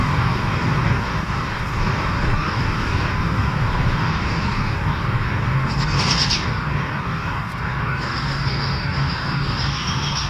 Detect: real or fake fake